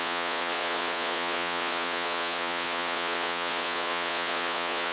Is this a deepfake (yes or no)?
yes